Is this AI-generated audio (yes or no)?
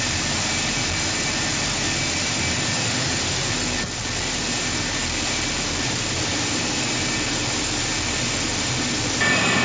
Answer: no